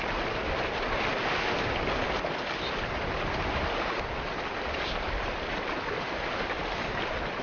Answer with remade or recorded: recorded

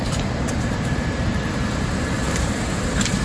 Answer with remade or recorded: remade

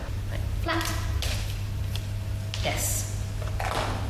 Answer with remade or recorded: recorded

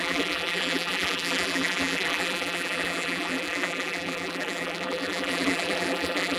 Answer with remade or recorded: remade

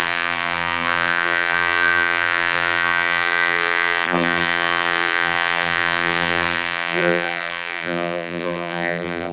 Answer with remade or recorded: remade